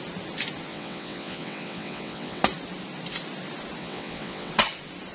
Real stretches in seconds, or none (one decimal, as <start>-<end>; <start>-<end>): 0.0-0.7; 2.4-3.8; 4.5-5.1